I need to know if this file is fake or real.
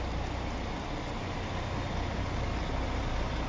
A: real